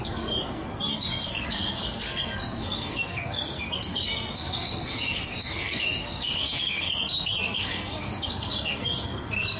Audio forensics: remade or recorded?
remade